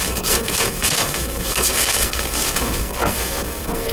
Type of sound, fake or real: fake